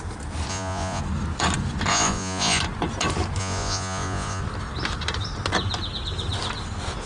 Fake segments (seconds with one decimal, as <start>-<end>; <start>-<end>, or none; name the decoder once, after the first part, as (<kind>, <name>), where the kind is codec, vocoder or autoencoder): 0.5-1.0 (vocoder, Vocos); 1.9-2.6; 3.4-4.4